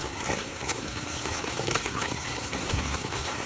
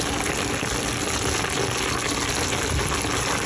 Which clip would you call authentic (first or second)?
second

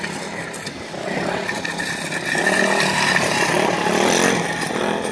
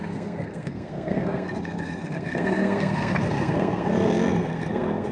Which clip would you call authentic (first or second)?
first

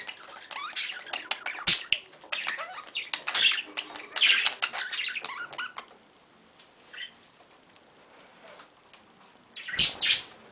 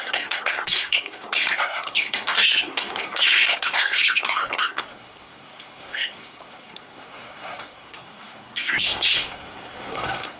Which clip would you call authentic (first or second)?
first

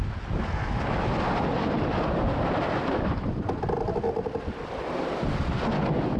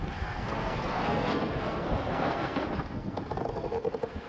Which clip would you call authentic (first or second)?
first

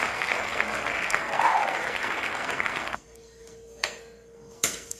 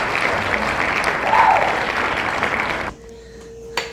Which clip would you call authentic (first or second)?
second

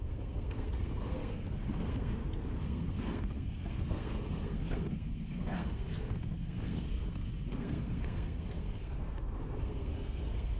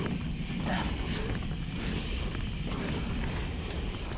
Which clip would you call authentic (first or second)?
second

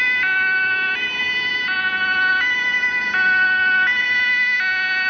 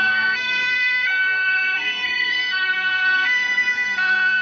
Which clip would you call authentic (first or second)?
first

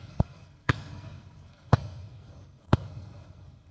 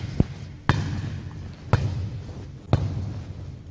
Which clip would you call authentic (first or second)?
second